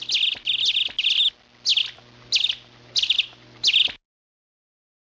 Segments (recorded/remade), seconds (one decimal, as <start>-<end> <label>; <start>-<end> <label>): 0.0-5.0 recorded

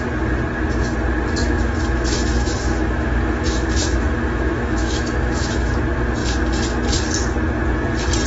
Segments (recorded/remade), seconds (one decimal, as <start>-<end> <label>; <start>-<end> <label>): 0.0-1.4 recorded; 1.4-5.8 remade; 5.8-8.3 recorded

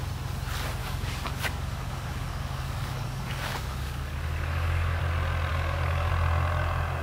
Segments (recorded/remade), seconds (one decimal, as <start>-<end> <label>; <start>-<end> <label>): 0.0-0.8 recorded; 0.8-5.0 remade; 5.0-5.5 recorded; 5.5-6.1 remade; 6.1-7.0 recorded

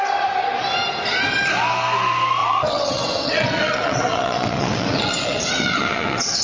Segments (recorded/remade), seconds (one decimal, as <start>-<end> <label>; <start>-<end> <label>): 0.0-2.4 recorded; 2.4-6.4 remade

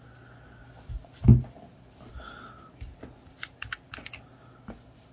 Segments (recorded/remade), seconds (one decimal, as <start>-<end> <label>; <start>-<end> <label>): 0.0-5.1 recorded

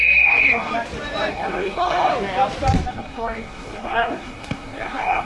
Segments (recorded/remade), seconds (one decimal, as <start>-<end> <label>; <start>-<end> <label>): 0.0-0.7 remade; 0.7-1.3 recorded; 1.3-2.1 remade; 2.1-2.9 recorded; 2.9-5.3 remade

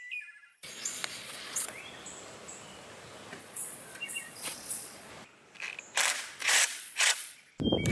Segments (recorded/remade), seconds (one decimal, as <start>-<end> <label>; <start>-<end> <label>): 0.0-0.5 recorded; 0.5-1.8 remade; 1.8-3.4 recorded; 3.4-5.1 remade; 5.1-6.4 recorded; 6.4-7.5 remade; 7.5-7.9 recorded